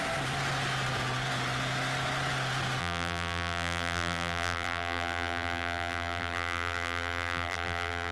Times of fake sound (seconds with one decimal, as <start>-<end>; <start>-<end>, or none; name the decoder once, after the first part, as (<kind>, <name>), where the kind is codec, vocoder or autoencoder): 2.8-8.1 (vocoder, BigVGAN v2)